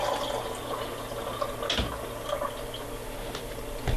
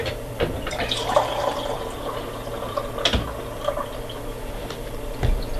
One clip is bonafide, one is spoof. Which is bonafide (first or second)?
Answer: first